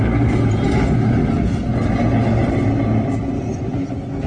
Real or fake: real